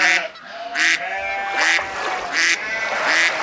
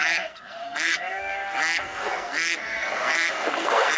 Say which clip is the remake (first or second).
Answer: second